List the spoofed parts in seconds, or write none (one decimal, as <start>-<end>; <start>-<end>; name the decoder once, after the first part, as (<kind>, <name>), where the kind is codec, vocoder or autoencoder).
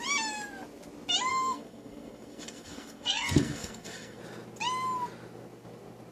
1.3-4.2 (codec, SNAC)